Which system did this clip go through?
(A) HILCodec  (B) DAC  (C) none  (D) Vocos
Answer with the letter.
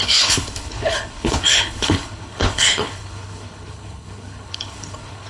A